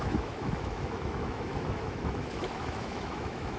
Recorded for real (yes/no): no